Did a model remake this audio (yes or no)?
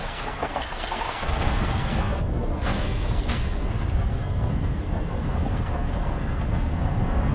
yes